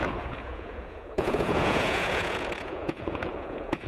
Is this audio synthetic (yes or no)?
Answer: yes